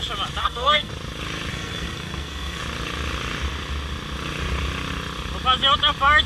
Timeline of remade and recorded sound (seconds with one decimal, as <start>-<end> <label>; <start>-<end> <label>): 0.0-0.4 recorded; 0.4-0.9 remade; 0.9-1.5 recorded; 1.5-2.6 remade; 2.6-6.3 recorded